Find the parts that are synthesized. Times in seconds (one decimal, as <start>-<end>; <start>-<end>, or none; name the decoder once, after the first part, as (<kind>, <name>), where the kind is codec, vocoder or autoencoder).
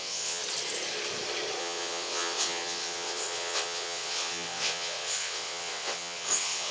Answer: 0.0-0.4 (vocoder, WaveNeXt); 1.6-6.7